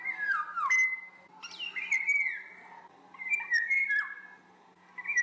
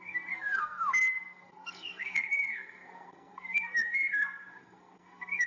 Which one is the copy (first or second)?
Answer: second